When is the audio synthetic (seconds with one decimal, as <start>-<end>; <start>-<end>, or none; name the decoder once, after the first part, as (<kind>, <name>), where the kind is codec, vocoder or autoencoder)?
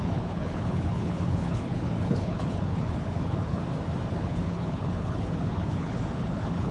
0.0-3.6 (codec, HILCodec); 4.1-6.7